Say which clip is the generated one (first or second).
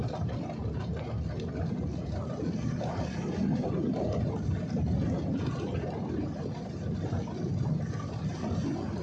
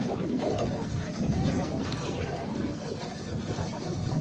second